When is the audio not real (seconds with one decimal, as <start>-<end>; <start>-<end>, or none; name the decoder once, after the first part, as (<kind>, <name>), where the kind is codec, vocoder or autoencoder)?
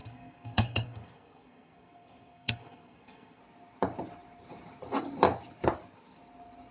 0.0-3.4 (codec, SNAC)